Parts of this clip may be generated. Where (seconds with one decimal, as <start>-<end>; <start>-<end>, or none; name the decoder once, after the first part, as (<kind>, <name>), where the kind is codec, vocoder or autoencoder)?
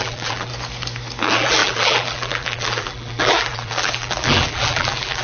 0.0-0.5 (vocoder, BigVGAN v2); 1.2-5.2